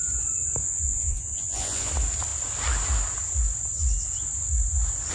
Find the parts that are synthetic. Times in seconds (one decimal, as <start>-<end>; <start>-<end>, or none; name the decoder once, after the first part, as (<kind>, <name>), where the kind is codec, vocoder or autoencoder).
0.6-1.9 (vocoder, Vocos)